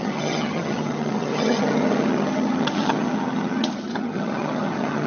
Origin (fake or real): fake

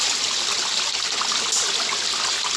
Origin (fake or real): real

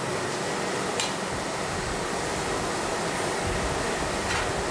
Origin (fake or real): real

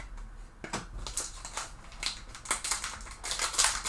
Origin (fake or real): real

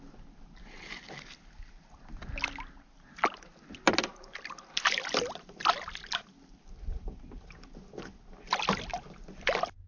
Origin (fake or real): real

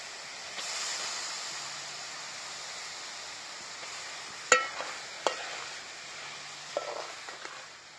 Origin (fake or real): real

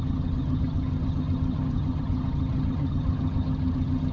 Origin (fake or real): fake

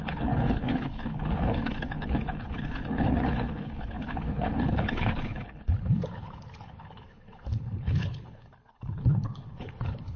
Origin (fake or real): fake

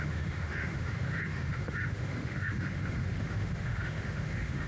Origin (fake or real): fake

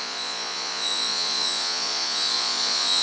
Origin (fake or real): fake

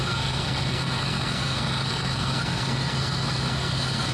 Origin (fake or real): fake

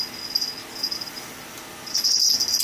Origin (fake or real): real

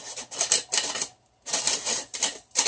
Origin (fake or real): real